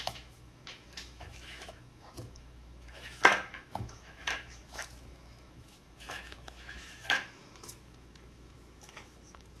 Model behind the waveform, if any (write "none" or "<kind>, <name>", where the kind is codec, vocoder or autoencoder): autoencoder, DAC-VAE